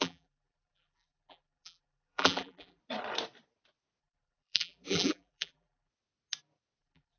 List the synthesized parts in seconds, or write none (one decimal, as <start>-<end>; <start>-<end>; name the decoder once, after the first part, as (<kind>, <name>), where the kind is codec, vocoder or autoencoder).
0.0-2.8 (vocoder, BigVGAN v2); 4.0-5.9; 6.8-7.2